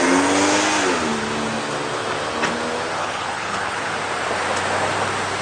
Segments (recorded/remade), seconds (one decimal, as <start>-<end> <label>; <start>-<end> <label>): 0.0-3.0 recorded; 3.0-3.9 remade; 3.9-5.4 recorded